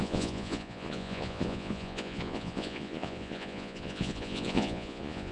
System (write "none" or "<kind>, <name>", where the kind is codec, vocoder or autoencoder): vocoder, Vocos